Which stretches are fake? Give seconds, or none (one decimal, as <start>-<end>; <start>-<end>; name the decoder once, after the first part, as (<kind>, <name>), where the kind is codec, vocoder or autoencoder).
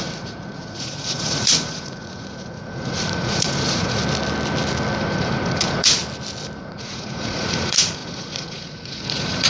0.0-4.0 (vocoder, Vocos); 5.0-6.0; 6.6-9.5